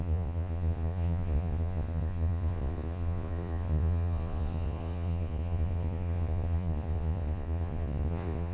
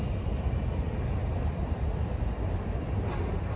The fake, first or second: first